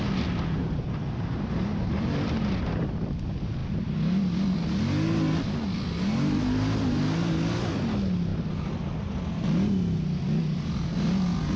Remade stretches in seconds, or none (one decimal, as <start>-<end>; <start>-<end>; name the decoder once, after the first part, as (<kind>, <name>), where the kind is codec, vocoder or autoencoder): 1.7-3.0 (vocoder, BigVGAN v2)